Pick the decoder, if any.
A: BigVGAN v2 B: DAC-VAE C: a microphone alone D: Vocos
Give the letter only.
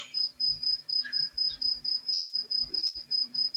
A